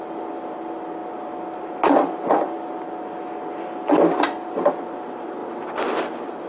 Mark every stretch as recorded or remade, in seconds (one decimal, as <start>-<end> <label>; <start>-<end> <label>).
0.0-6.5 recorded